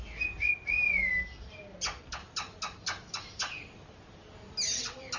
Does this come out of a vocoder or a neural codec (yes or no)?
no